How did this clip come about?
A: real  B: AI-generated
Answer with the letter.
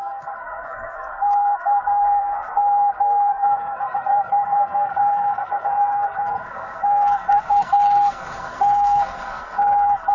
B